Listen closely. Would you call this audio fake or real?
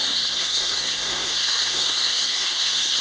fake